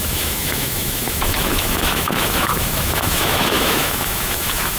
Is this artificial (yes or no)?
yes